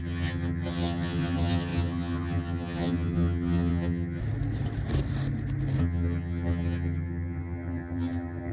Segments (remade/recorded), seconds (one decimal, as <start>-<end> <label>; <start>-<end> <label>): 0.0-4.2 remade; 4.2-5.8 recorded; 5.8-8.5 remade